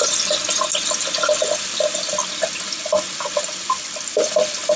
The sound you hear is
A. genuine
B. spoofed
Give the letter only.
A